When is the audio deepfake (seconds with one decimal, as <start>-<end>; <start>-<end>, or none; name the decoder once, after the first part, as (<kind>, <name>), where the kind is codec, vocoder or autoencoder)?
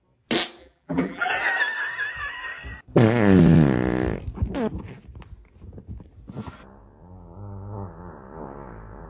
0.6-1.3 (vocoder, BigVGAN v2)